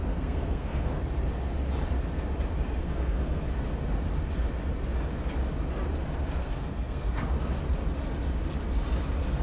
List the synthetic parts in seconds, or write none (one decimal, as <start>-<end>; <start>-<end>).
0.0-1.0; 2.8-3.4; 6.4-7.2